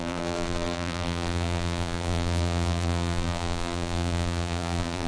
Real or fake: fake